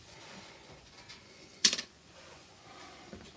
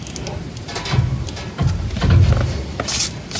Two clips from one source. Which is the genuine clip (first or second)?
second